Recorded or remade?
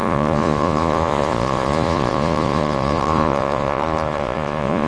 remade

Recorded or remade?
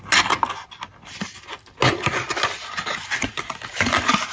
recorded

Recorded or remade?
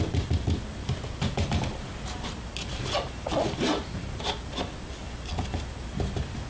recorded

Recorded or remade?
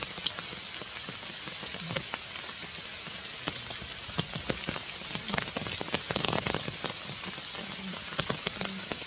recorded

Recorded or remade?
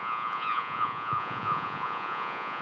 remade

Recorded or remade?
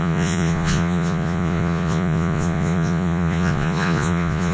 remade